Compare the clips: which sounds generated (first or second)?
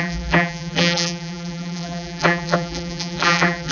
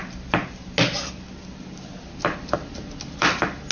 first